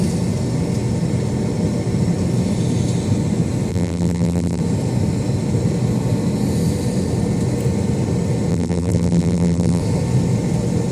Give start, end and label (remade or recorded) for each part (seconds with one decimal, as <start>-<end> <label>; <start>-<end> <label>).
0.0-3.7 recorded; 3.7-4.6 remade; 4.6-8.5 recorded; 8.5-9.8 remade; 9.8-10.9 recorded